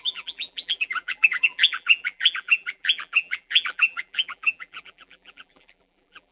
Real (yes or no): no